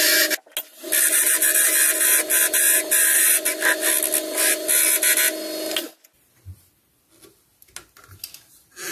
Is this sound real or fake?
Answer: real